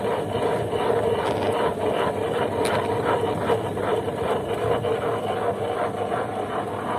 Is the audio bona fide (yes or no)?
yes